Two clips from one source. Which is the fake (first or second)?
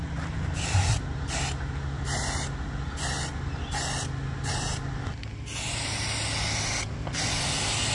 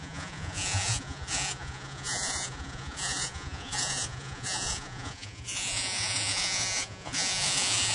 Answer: second